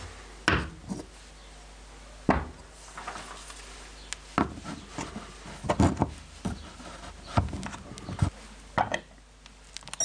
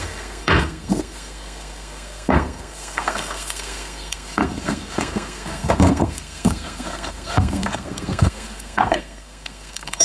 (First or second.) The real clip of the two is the first